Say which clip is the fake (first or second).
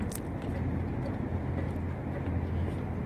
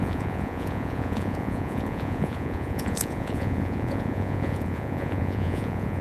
second